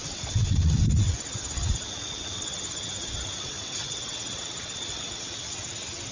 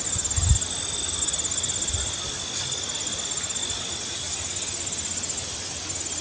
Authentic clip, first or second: second